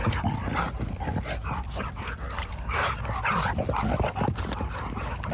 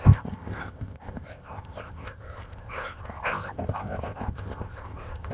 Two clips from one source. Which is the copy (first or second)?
second